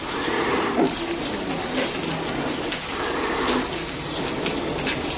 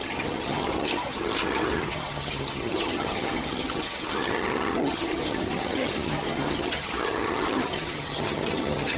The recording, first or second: first